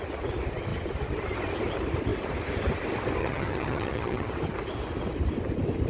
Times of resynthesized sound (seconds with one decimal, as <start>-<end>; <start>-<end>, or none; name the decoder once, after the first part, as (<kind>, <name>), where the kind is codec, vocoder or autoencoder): 3.2-4.3 (vocoder, HiFi-GAN)

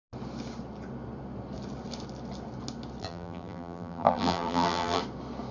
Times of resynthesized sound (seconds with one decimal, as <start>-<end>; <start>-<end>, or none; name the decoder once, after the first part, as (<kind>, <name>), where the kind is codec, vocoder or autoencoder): 3.0-5.0 (vocoder, BigVGAN v2)

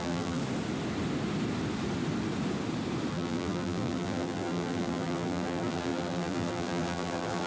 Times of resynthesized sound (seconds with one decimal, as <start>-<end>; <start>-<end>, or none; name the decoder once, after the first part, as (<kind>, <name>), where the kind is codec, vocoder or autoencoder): 0.0-0.4 (vocoder, BigVGAN v2); 3.1-7.5

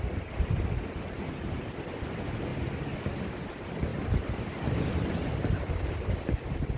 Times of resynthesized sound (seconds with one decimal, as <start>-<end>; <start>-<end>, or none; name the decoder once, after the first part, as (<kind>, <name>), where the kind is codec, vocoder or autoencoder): none

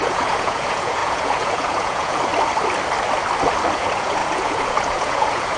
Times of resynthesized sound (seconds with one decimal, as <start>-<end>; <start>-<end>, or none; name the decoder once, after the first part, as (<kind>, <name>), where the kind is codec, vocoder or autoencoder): 0.0-2.3 (vocoder, Vocos); 3.7-5.6